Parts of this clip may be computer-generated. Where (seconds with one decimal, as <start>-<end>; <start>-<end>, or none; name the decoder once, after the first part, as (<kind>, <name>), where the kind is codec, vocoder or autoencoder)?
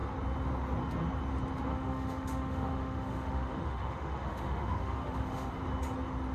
1.7-5.5 (autoencoder, DAC-VAE)